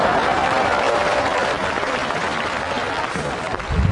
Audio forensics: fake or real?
real